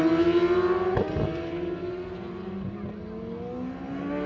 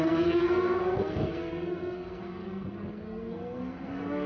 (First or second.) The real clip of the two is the first